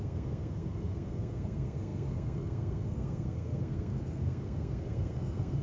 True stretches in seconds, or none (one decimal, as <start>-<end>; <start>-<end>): none